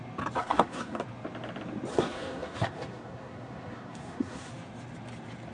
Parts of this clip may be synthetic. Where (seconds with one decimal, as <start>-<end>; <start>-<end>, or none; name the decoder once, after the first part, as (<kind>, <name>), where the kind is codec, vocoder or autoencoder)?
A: 0.4-1.0 (codec, SNAC); 1.9-4.5